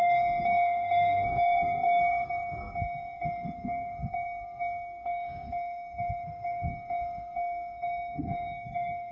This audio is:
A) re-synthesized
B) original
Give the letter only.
A